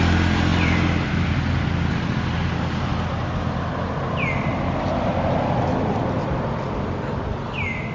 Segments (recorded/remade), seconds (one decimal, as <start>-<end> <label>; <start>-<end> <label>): 0.0-0.5 recorded; 0.5-1.4 remade; 1.4-7.9 recorded